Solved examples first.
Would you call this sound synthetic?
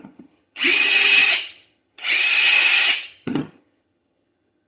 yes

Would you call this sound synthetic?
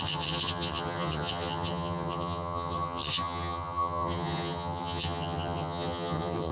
yes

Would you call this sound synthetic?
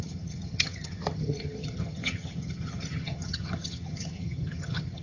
yes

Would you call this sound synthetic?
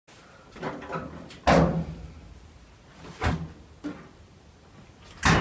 no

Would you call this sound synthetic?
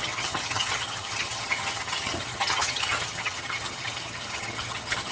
yes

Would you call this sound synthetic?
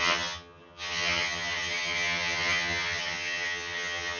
yes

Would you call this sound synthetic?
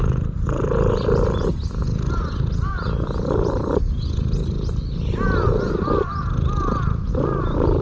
no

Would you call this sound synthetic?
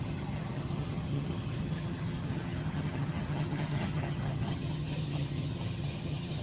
yes